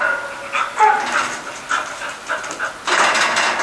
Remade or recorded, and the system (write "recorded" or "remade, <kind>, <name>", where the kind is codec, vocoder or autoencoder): recorded